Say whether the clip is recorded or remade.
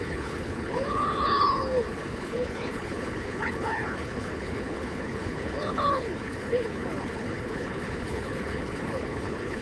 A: remade